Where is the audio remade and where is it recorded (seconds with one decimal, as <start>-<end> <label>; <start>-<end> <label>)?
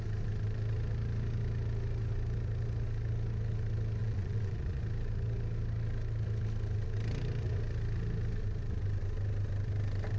0.0-4.0 recorded; 4.0-4.8 remade; 4.8-10.2 recorded